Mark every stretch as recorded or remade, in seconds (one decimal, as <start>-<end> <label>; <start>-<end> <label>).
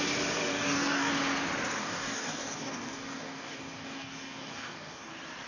0.0-0.5 recorded; 0.5-1.1 remade; 1.1-1.8 recorded; 1.8-5.1 remade; 5.1-5.5 recorded